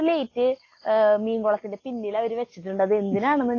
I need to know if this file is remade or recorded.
recorded